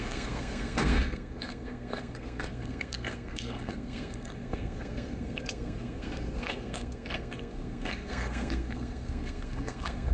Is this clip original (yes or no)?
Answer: no